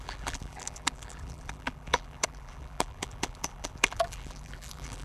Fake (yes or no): yes